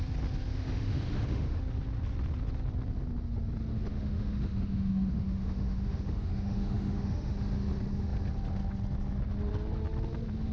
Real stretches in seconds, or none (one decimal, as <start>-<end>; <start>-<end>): 0.0-0.5; 1.6-3.7; 7.3-10.5